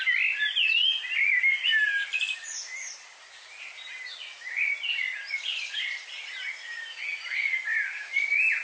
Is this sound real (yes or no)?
yes